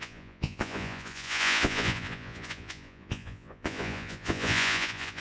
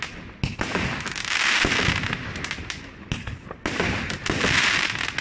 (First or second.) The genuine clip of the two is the second